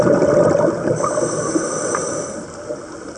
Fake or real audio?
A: real